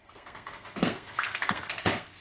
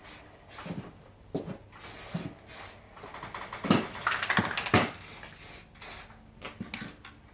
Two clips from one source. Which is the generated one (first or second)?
first